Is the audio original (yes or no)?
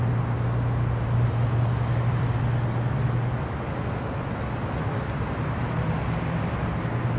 yes